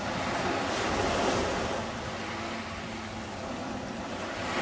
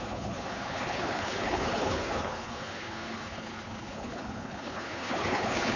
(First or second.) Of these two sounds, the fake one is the second